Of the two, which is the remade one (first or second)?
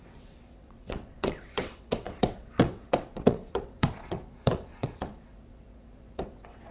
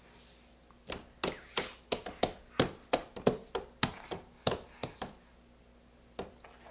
first